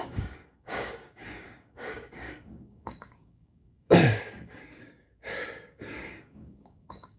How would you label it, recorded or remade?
remade